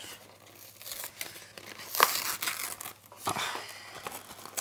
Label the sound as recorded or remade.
recorded